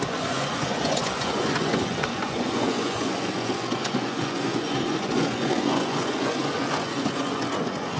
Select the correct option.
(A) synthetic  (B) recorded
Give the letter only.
A